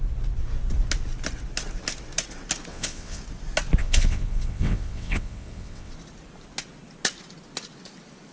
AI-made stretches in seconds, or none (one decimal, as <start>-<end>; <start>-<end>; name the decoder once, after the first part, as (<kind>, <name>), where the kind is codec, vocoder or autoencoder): 2.7-3.2 (vocoder, WaveNeXt); 3.8-5.9